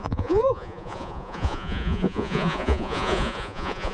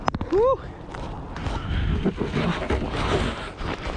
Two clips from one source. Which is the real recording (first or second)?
second